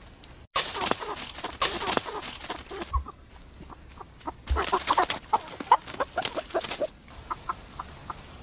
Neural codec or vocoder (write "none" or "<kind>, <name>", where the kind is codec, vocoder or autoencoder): none